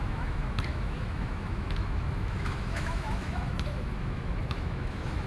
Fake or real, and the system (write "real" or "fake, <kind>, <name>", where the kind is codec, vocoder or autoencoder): fake, autoencoder, DAC-VAE